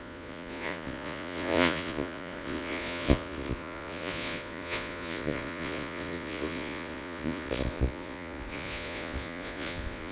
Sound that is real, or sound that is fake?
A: fake